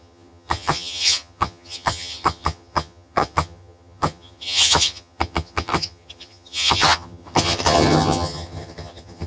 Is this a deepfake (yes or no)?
yes